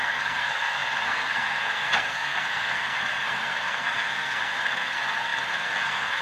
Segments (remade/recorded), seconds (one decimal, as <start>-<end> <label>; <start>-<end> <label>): 0.0-6.2 remade

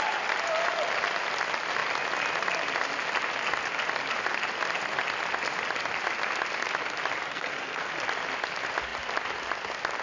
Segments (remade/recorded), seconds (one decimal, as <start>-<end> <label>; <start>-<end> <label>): 0.0-7.3 recorded; 7.3-7.9 remade; 7.9-10.0 recorded

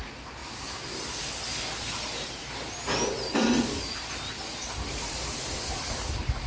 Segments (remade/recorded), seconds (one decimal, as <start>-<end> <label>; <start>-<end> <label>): 0.0-6.5 recorded

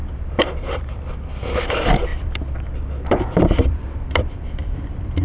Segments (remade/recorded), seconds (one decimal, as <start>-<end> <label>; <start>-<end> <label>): 0.0-1.1 remade; 1.1-2.1 recorded; 2.1-5.2 remade

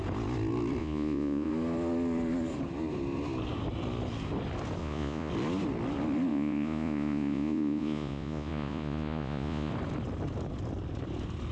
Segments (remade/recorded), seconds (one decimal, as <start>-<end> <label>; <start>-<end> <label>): 0.0-0.8 recorded; 0.8-1.5 remade; 1.5-4.8 recorded; 4.8-5.3 remade; 5.3-6.3 recorded; 6.3-9.7 remade; 9.7-11.5 recorded